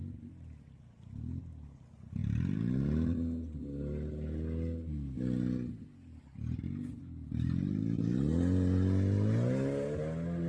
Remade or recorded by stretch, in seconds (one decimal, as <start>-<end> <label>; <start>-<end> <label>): 0.0-10.5 recorded

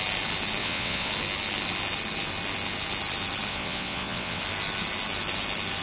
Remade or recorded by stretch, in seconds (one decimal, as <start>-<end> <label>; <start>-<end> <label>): 0.0-0.6 recorded; 0.6-1.1 remade; 1.1-3.5 recorded; 3.5-4.4 remade; 4.4-5.8 recorded

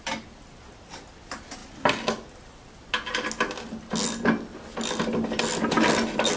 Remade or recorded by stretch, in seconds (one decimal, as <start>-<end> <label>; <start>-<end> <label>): 0.0-6.4 recorded